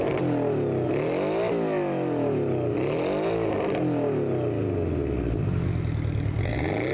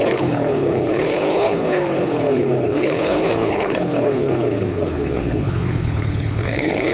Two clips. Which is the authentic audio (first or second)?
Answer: first